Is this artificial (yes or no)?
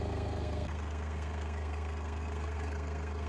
yes